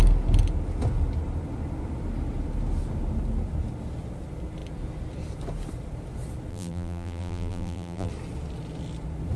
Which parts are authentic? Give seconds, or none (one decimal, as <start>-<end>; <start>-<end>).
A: 0.0-6.5; 8.1-9.4

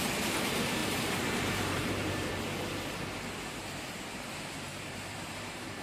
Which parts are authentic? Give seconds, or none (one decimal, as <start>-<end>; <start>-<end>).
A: 0.0-0.8; 2.3-4.7